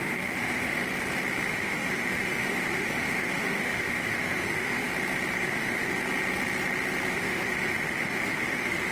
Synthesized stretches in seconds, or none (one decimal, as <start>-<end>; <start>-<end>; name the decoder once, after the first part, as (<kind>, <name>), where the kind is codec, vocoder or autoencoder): 0.0-0.8 (autoencoder, DAC-VAE); 1.5-4.9; 5.4-5.9; 7.1-8.9